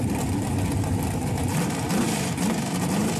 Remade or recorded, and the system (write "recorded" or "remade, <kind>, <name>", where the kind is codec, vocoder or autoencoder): remade, vocoder, BigVGAN v2